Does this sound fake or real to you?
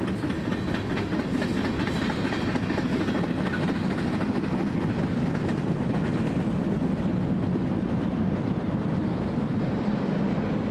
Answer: real